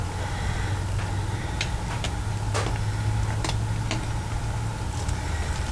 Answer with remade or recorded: recorded